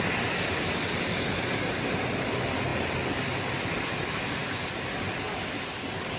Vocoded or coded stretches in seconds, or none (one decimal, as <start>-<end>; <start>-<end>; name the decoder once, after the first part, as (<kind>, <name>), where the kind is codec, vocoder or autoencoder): none